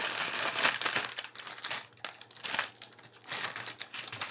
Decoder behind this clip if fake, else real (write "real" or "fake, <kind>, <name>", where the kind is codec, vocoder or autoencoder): real